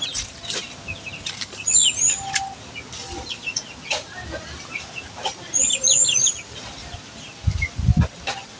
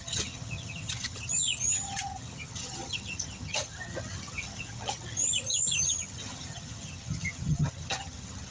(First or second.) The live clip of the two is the first